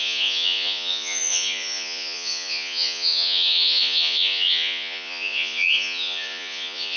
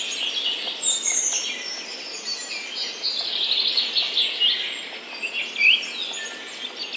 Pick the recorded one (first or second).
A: second